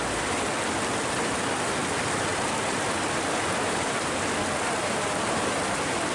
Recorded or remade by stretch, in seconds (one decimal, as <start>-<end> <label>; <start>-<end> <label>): 0.0-2.3 recorded; 2.3-4.6 remade; 4.6-6.1 recorded